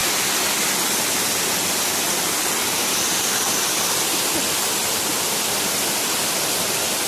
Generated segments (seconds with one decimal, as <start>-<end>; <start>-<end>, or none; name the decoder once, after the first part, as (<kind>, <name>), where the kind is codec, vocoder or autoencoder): none